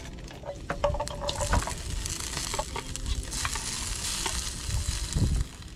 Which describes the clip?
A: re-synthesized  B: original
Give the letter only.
B